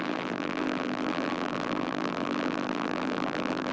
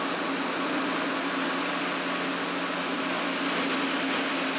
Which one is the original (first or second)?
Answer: second